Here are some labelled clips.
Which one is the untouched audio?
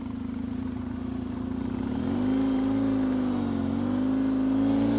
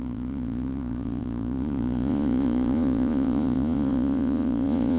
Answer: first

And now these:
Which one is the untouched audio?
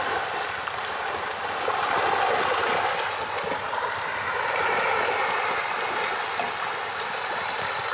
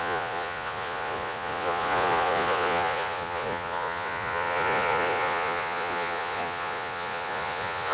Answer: first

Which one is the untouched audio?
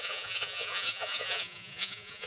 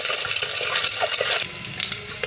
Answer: second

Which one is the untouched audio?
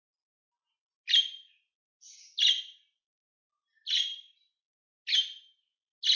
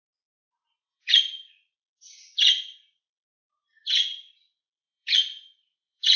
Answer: first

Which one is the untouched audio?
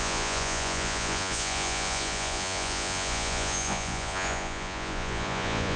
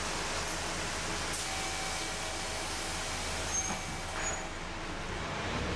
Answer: second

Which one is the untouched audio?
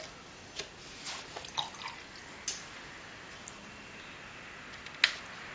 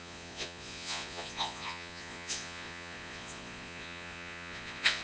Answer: first